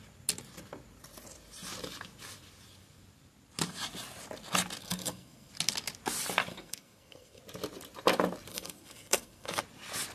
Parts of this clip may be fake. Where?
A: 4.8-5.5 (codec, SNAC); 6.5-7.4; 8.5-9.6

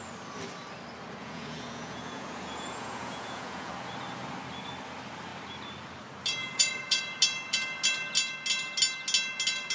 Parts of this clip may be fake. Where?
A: 1.2-3.7 (vocoder, Vocos); 6.4-7.0

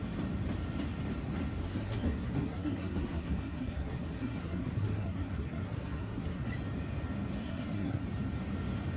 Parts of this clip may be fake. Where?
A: 1.6-6.5 (codec, SNAC); 7.4-8.0

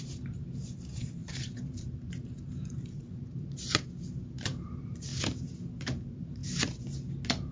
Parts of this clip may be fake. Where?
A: 0.0-5.1 (vocoder, BigVGAN v2); 5.8-6.4